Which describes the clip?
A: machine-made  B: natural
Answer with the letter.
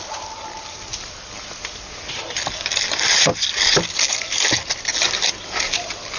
B